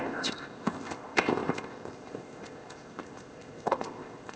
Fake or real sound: fake